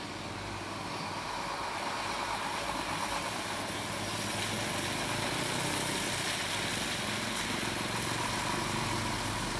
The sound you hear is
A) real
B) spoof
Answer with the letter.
A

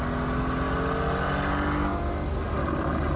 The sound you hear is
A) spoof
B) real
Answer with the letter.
B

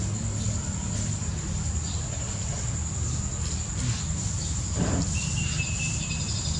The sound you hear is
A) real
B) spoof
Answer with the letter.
A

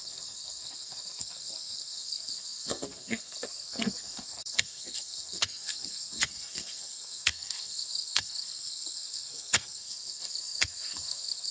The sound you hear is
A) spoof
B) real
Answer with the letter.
A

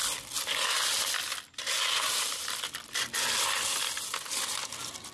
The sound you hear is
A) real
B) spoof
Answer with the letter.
A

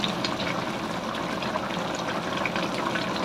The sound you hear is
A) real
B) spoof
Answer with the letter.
A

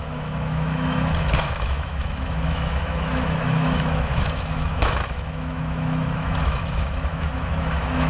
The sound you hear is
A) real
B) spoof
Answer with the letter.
B